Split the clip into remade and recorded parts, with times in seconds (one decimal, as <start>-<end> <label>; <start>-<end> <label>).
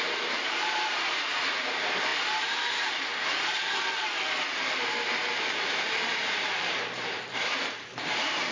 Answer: 0.0-3.1 remade; 3.1-5.5 recorded; 5.5-8.5 remade